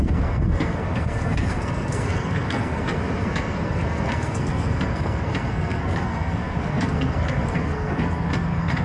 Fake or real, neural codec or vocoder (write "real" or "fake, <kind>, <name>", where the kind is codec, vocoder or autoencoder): fake, codec, SNAC